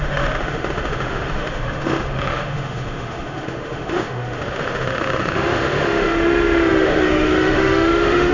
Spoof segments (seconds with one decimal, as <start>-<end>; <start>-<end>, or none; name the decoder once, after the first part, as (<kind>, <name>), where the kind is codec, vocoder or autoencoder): 0.0-8.3 (autoencoder, DAC-VAE)